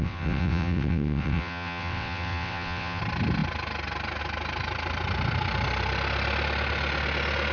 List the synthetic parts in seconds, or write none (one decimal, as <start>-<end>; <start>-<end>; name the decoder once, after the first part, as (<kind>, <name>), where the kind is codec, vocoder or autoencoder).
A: 0.0-3.0 (vocoder, WaveNeXt)